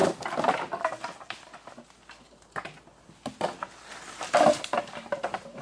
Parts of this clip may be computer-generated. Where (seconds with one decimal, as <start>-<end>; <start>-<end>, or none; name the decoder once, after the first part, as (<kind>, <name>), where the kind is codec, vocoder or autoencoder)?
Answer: none